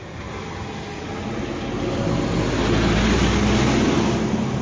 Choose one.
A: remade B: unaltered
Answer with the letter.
B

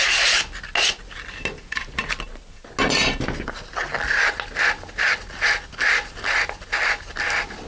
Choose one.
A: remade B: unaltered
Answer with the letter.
B